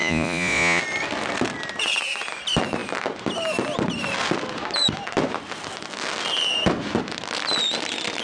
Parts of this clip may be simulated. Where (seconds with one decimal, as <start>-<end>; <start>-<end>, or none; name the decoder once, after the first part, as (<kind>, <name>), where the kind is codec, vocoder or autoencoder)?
0.0-0.8 (vocoder, Vocos)